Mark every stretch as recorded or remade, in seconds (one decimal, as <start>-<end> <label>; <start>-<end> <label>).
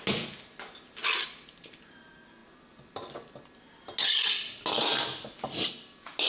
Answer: 0.0-6.3 recorded